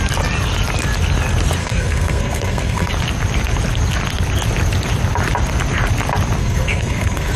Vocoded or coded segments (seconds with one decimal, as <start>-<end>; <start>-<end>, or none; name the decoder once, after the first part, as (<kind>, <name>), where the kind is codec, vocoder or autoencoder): 1.6-2.9 (codec, SNAC); 6.4-7.4